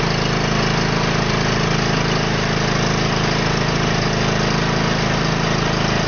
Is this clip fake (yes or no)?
no